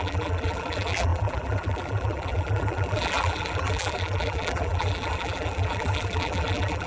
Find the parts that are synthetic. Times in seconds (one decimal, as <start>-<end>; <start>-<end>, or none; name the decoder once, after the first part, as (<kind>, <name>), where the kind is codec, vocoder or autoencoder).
0.0-6.9 (vocoder, BigVGAN v2)